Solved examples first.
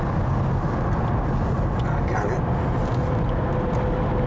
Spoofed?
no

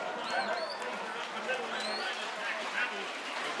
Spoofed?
no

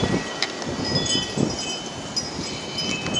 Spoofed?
no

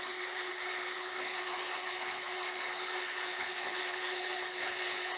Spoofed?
yes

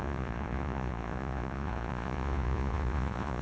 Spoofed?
yes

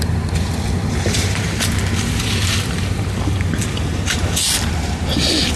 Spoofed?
yes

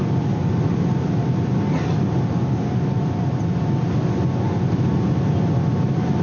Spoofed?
no